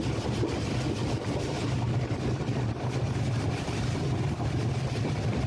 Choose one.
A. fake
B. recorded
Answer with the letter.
A